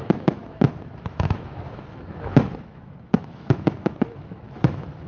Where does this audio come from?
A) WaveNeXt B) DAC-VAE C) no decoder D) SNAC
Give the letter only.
B